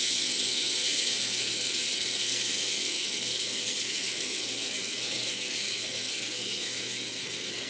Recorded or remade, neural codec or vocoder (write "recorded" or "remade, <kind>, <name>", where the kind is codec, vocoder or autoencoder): remade, codec, SNAC